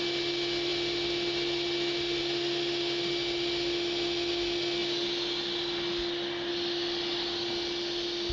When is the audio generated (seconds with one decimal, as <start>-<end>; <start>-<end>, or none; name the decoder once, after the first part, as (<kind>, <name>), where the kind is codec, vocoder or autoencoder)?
none